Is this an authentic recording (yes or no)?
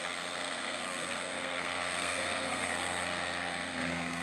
no